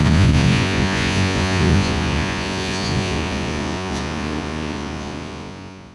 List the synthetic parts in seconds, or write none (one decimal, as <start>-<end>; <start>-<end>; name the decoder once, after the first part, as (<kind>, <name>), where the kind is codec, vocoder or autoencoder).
0.0-5.9 (vocoder, Vocos)